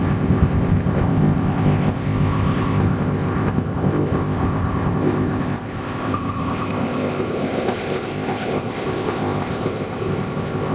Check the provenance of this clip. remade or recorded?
remade